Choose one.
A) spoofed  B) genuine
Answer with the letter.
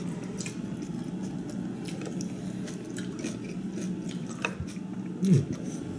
B